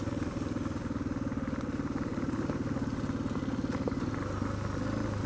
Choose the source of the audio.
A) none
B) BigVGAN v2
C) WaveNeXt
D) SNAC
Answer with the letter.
A